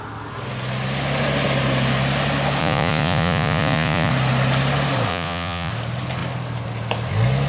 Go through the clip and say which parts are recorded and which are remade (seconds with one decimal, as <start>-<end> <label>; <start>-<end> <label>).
0.0-2.6 recorded; 2.6-4.1 remade; 4.1-5.1 recorded; 5.1-5.7 remade; 5.7-7.5 recorded